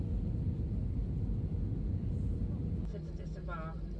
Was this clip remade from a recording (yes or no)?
no